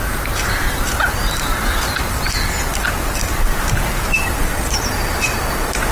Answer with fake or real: fake